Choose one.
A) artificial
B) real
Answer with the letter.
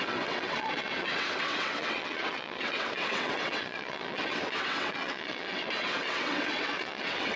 A